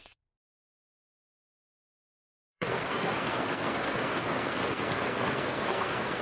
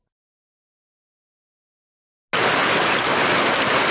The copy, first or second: first